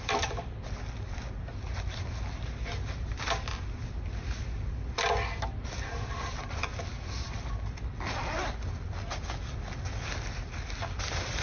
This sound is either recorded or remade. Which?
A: recorded